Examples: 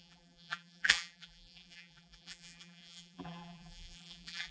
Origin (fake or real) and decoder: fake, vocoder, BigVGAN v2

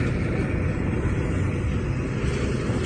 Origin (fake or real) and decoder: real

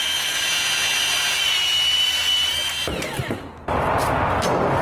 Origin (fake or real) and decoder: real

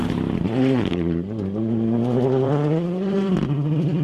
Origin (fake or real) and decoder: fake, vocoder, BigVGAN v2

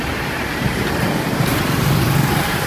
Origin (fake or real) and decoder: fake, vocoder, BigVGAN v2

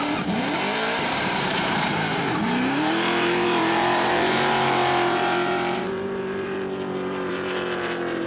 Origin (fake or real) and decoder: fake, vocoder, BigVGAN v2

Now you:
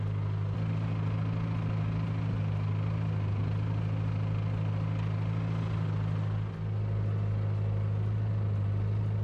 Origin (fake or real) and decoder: real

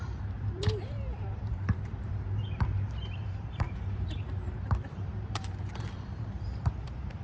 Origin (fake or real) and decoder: fake, vocoder, BigVGAN v2